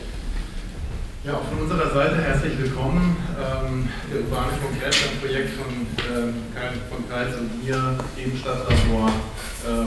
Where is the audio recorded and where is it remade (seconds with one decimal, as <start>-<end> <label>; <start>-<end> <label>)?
0.0-7.5 recorded; 7.5-9.9 remade